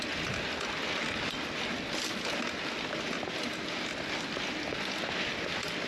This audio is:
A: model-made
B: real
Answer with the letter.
B